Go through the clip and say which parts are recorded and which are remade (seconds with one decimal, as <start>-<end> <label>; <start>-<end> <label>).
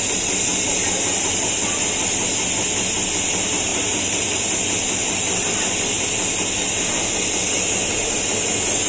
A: 0.0-0.5 recorded; 0.5-1.4 remade; 1.4-3.7 recorded; 3.7-5.5 remade; 5.5-8.9 recorded